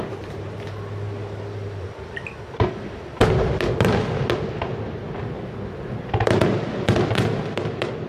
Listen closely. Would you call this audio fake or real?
real